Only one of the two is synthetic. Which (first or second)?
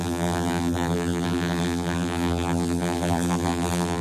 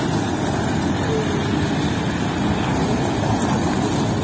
first